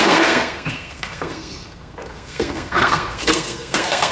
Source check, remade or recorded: remade